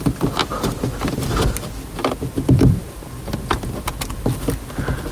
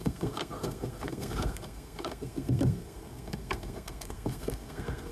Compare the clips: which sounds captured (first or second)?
first